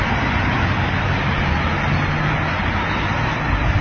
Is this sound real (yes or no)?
yes